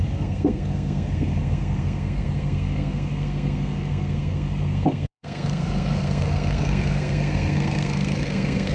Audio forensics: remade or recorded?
remade